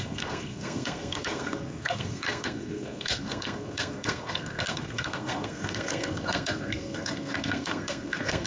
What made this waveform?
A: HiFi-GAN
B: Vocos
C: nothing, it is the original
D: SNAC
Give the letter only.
D